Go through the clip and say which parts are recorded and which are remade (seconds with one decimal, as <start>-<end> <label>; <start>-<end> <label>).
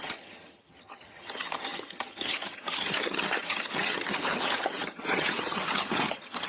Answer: 0.0-6.5 remade